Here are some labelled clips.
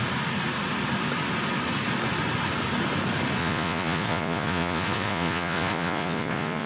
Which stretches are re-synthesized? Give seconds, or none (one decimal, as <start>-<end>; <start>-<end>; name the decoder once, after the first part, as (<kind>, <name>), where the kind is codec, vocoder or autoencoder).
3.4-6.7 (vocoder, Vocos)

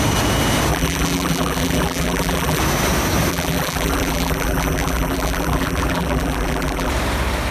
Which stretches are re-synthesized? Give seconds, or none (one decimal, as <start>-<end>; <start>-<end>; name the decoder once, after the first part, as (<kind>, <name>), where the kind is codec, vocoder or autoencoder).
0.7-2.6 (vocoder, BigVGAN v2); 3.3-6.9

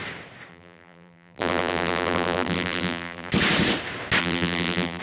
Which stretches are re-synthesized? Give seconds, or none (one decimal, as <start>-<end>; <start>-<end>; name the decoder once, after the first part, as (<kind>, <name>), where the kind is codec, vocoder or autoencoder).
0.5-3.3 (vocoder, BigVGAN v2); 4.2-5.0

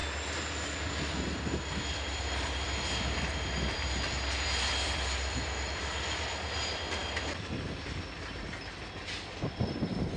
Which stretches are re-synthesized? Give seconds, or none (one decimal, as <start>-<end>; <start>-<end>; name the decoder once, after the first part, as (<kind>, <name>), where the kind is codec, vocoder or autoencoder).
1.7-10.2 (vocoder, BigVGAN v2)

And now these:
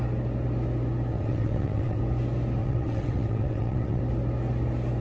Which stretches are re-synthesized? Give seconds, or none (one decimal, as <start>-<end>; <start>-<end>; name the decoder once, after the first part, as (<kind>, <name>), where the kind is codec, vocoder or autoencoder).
1.1-2.0 (vocoder, WaveNeXt); 2.6-4.0

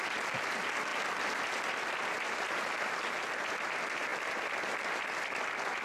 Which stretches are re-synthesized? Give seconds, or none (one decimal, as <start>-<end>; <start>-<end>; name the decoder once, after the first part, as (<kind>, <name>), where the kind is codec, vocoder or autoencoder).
none

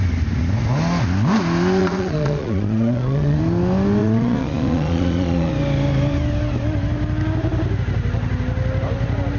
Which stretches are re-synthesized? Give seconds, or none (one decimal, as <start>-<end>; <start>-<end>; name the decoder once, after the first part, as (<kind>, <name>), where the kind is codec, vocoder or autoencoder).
1.8-3.4 (vocoder, Vocos); 4.0-5.5